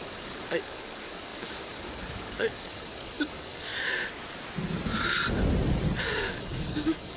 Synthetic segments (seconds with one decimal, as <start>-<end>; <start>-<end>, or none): 0.0-3.7; 6.0-7.2